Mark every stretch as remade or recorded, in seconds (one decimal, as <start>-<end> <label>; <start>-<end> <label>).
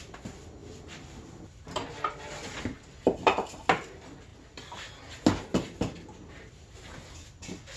0.0-7.8 recorded